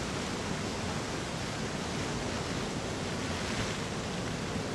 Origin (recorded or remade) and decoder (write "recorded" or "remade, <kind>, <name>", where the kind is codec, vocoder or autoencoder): recorded